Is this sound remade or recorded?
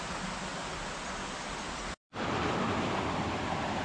recorded